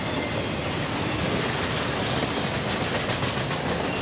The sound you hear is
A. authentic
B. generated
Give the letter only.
A